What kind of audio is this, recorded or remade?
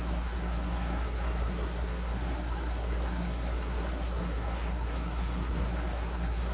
remade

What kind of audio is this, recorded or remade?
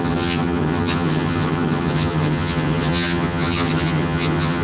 remade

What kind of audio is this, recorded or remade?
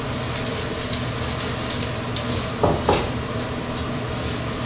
recorded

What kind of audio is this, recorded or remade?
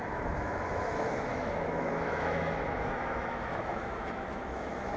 remade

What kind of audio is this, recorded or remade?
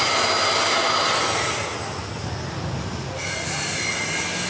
recorded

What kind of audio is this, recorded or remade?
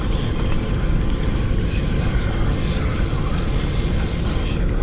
recorded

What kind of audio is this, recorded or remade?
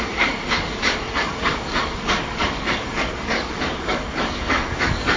remade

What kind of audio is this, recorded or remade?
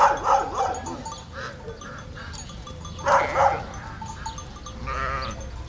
recorded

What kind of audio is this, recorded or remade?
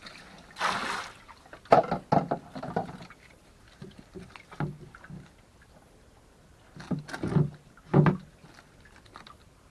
recorded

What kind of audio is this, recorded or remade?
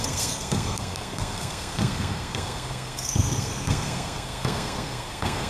remade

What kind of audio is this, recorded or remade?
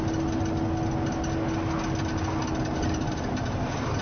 recorded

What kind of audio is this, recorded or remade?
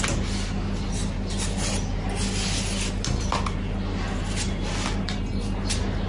recorded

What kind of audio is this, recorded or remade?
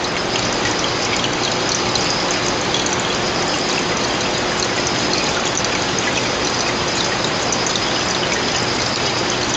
recorded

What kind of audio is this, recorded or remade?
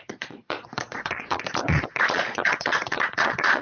remade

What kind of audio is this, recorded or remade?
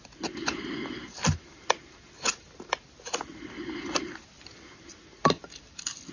recorded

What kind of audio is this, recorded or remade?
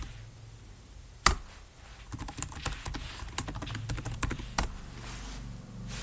recorded